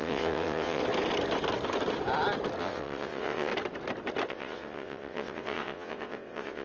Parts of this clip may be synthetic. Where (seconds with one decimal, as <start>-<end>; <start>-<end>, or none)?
0.0-0.8; 2.6-3.5; 4.3-6.6